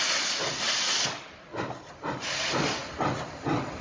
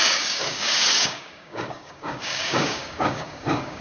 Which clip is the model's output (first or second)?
second